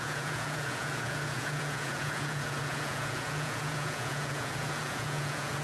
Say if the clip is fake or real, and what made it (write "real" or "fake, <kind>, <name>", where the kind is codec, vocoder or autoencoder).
fake, vocoder, Vocos